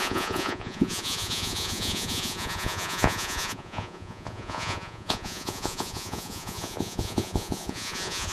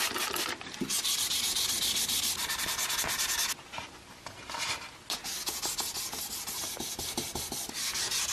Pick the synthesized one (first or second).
first